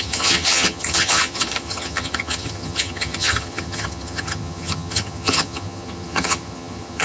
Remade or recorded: remade